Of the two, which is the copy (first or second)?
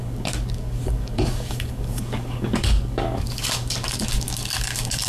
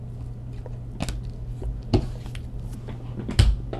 first